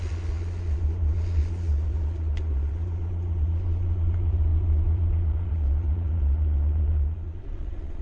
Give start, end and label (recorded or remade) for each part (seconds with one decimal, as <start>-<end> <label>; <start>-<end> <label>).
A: 0.0-8.0 remade